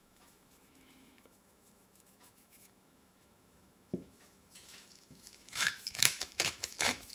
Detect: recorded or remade remade